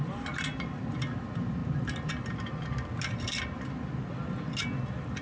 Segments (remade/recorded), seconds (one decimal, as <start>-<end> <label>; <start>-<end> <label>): 0.0-5.2 recorded